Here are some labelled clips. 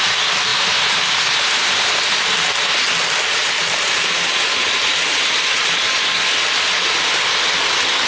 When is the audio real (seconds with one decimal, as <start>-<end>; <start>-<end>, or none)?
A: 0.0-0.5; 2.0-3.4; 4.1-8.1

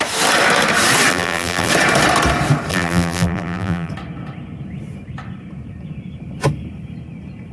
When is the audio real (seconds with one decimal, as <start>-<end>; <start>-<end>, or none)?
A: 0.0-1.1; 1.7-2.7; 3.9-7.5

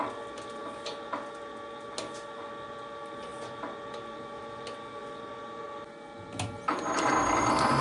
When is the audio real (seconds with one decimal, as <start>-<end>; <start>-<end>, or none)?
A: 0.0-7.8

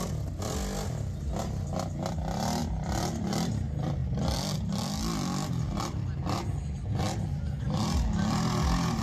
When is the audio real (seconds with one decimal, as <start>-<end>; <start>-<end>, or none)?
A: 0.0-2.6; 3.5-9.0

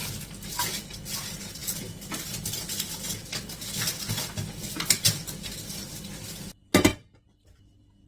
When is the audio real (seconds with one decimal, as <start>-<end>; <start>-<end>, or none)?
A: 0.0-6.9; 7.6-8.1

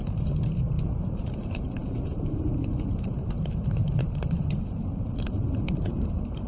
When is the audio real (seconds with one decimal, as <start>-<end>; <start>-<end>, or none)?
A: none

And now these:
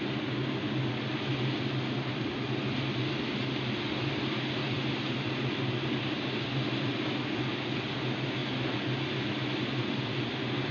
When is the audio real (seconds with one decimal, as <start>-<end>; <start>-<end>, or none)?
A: 0.0-4.6; 5.4-10.7

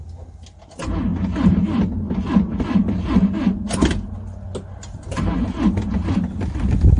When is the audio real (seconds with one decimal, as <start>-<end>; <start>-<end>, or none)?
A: 0.0-7.0